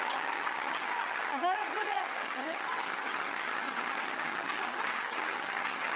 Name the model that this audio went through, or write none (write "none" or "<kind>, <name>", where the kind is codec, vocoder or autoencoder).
vocoder, HiFi-GAN